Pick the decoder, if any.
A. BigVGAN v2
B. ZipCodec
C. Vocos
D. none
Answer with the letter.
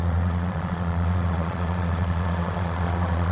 C